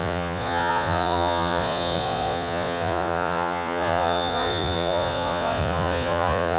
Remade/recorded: remade